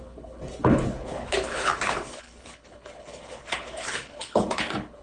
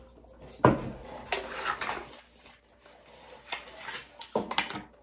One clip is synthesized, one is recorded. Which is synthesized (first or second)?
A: first